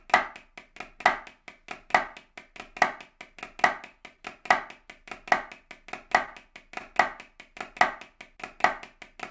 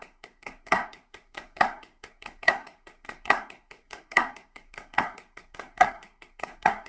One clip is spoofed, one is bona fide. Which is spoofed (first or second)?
second